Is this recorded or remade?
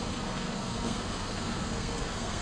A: remade